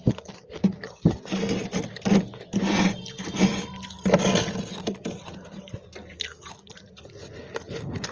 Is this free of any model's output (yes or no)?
yes